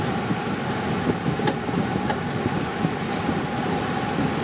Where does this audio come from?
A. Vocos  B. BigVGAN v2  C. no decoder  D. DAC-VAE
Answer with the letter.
C